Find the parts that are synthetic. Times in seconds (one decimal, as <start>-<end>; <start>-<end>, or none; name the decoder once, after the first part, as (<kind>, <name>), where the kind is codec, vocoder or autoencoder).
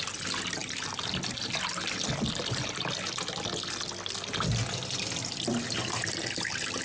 none